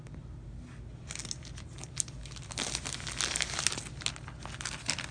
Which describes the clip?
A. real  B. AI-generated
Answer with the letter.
A